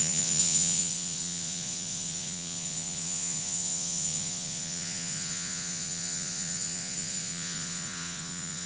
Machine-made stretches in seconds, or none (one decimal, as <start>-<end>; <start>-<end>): 0.0-8.7